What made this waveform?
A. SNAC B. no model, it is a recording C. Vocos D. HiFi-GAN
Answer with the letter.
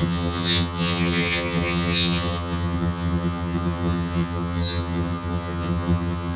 D